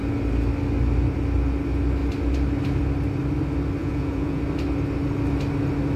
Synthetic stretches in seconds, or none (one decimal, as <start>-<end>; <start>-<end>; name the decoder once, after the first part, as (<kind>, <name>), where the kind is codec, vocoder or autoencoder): 3.8-4.4 (vocoder, Vocos)